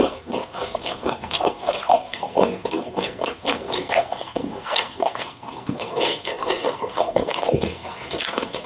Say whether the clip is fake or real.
fake